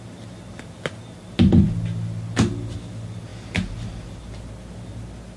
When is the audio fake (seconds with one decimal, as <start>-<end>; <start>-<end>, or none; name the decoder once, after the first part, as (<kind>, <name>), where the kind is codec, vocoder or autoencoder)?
none